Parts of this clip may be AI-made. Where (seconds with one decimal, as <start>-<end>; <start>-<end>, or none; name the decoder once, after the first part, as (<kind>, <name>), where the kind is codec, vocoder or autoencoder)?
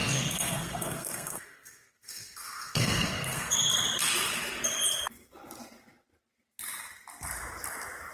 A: 0.0-3.5 (codec, SNAC)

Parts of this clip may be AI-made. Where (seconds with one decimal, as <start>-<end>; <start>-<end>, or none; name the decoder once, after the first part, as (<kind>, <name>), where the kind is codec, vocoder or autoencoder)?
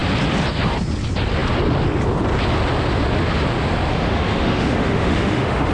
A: 3.9-5.7 (autoencoder, DAC-VAE)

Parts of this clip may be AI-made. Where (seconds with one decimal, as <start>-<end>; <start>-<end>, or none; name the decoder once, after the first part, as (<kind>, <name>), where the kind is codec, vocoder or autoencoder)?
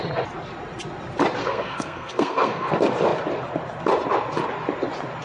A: 1.4-2.7 (codec, SNAC)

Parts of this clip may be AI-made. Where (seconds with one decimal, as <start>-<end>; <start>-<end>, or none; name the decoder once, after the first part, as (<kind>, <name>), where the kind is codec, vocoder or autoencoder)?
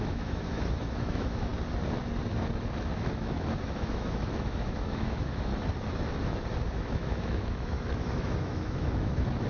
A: 0.0-1.5 (autoencoder, DAC-VAE); 2.9-5.5; 6.7-9.5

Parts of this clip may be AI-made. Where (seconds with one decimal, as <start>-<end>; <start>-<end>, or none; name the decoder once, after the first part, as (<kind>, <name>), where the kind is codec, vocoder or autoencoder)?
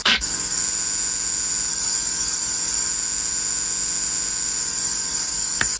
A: 0.0-0.6 (codec, DAC); 1.7-2.9; 4.6-5.8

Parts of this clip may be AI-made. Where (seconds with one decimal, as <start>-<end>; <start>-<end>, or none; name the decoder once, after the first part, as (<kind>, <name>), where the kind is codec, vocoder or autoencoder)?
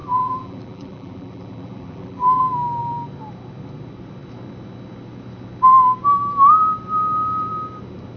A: 0.0-2.4 (vocoder, BigVGAN v2)